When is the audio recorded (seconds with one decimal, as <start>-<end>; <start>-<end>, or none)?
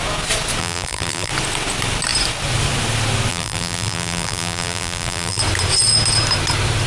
0.0-0.6; 1.3-3.3; 5.4-6.9